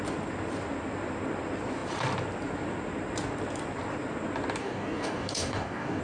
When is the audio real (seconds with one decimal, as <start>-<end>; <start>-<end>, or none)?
0.0-4.6